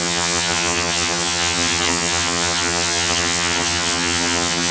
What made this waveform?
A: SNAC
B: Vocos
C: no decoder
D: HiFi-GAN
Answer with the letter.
D